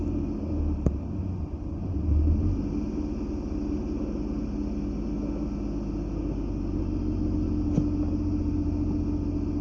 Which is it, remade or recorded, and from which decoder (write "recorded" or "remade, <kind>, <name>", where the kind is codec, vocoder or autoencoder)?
recorded